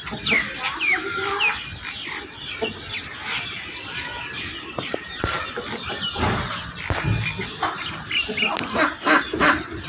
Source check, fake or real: real